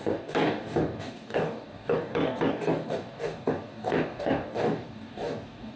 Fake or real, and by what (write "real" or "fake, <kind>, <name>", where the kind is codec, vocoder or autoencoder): fake, codec, DAC